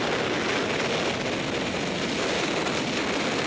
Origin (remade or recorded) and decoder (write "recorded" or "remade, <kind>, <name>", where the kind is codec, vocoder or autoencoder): recorded